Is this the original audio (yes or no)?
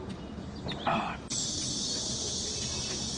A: yes